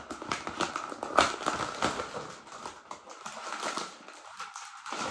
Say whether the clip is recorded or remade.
recorded